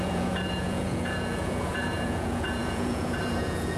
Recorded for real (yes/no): no